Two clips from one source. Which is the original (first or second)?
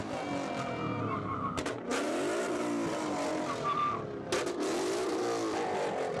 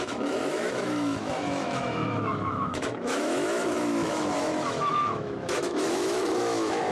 first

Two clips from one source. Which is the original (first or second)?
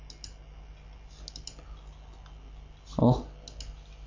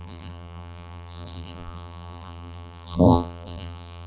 first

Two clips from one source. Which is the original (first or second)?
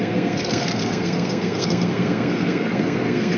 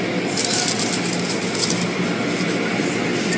second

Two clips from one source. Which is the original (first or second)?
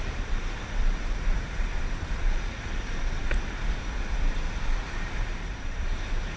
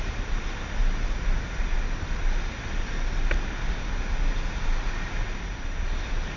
second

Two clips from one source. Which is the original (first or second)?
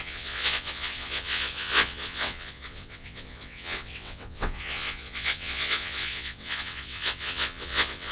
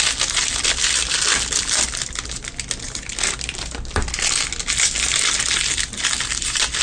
second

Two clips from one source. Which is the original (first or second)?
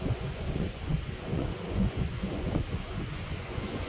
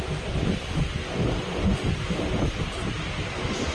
second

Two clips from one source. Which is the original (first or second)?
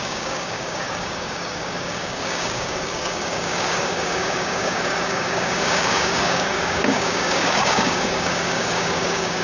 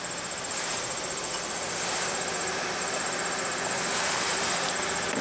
second